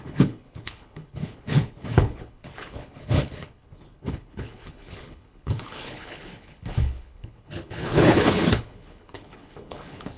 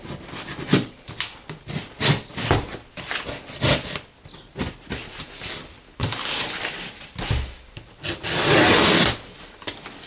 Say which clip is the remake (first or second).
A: first